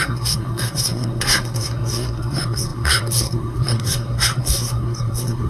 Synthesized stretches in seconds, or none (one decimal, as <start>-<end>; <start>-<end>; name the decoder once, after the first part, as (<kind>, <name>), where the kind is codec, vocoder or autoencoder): 0.0-5.5 (codec, SNAC)